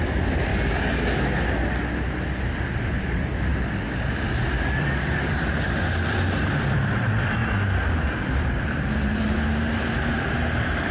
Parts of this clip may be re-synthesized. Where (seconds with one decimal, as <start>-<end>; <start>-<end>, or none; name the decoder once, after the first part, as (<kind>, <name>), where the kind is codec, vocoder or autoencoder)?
0.0-0.5 (vocoder, BigVGAN v2); 2.5-3.5; 4.8-7.4; 7.9-10.9